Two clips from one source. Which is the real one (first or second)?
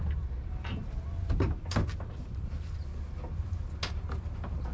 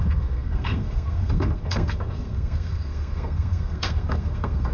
first